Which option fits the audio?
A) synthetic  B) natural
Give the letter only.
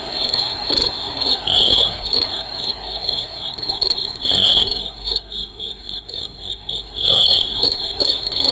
A